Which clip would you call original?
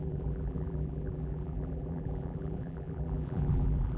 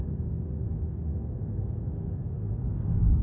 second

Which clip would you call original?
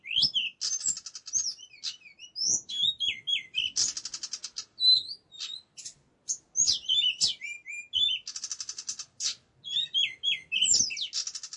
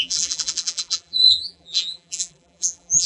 first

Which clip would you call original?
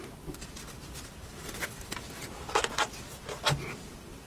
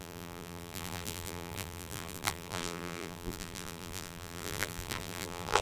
first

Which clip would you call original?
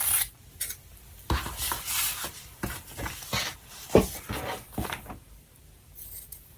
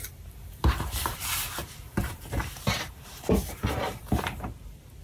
first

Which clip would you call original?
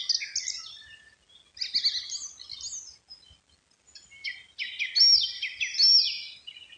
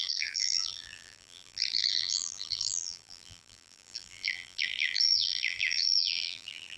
first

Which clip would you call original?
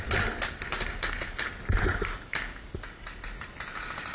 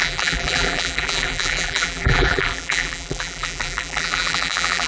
first